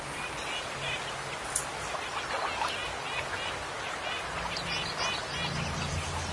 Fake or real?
real